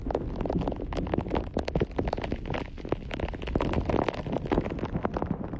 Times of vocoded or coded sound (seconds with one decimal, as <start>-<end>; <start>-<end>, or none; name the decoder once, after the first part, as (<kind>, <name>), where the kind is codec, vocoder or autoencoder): none

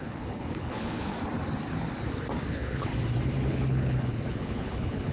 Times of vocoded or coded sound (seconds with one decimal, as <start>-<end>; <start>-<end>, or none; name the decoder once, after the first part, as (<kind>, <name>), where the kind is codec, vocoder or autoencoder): 0.0-1.1 (codec, HILCodec); 2.5-2.9; 3.5-5.1

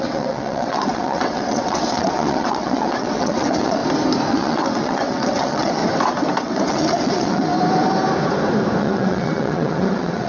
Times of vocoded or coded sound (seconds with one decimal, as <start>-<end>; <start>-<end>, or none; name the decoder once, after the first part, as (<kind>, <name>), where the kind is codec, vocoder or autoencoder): 0.0-3.8 (vocoder, WaveNeXt); 4.3-5.8; 6.4-7.5; 8.8-10.3

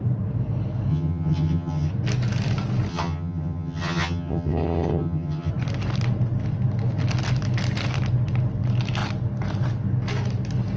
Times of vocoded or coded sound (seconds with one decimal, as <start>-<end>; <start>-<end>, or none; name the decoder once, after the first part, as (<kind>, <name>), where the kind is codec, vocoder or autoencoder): 0.9-1.9 (vocoder, HiFi-GAN); 2.9-5.5

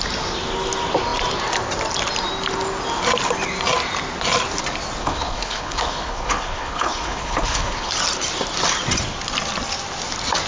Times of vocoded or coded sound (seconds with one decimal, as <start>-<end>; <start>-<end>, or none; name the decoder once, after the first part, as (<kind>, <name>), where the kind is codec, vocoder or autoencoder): 5.0-7.9 (codec, HILCodec)

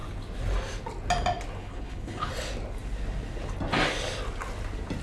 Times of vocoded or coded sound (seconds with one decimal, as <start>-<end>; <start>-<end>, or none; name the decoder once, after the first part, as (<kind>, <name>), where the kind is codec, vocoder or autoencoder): 1.6-2.3 (codec, HILCodec)

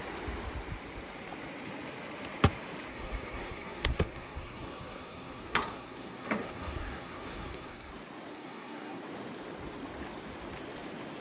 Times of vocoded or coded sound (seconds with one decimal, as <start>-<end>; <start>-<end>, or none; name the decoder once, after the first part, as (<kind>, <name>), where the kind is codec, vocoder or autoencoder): 2.9-7.9 (codec, SNAC); 8.3-9.0

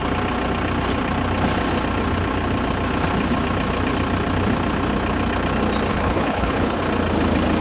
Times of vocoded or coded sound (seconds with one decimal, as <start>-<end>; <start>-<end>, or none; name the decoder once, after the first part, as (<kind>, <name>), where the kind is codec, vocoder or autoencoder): 5.9-6.8 (codec, HILCodec)